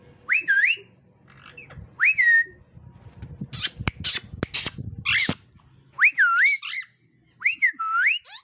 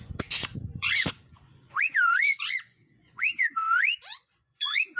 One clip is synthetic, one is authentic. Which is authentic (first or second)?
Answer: first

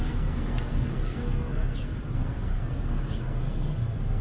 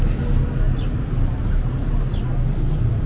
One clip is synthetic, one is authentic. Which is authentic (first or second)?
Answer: second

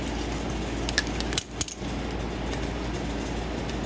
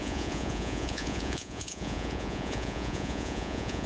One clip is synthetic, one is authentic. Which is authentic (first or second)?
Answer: first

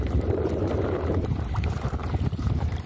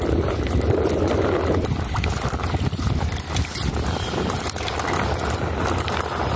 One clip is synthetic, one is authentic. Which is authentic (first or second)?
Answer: second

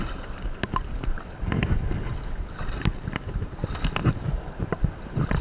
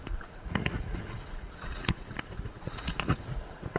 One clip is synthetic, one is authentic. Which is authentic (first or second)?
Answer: first